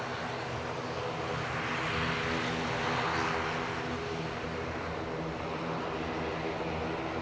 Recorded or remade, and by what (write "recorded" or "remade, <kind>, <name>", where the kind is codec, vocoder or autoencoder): recorded